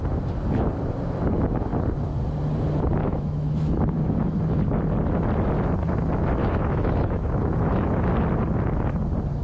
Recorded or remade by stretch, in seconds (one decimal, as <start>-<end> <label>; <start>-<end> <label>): 0.0-3.0 recorded; 3.0-4.4 remade; 4.4-6.4 recorded; 6.4-8.1 remade; 8.1-9.4 recorded